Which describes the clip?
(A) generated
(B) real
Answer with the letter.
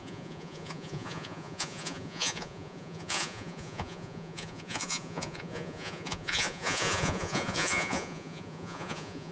A